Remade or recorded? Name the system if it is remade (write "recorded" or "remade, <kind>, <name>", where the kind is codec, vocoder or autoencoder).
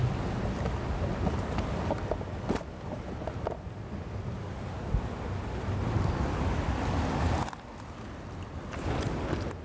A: recorded